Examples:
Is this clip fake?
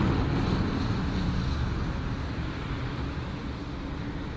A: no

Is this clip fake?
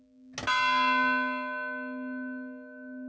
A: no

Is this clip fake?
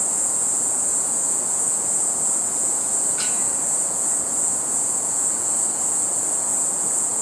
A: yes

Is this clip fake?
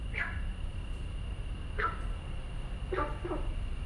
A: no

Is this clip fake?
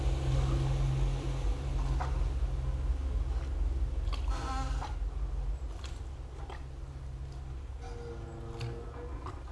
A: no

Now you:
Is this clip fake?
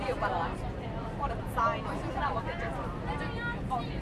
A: no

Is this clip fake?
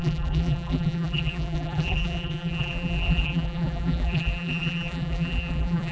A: yes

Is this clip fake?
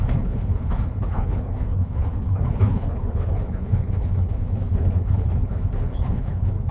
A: yes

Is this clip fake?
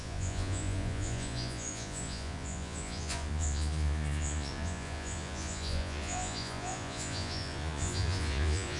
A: yes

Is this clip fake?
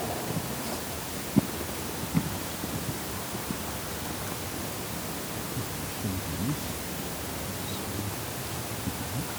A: no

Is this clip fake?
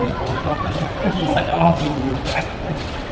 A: yes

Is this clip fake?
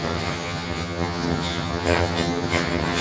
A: yes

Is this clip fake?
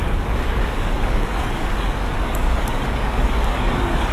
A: yes